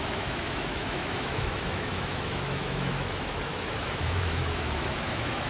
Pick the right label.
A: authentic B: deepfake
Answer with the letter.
B